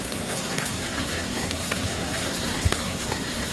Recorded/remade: remade